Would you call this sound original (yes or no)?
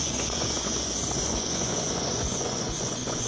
no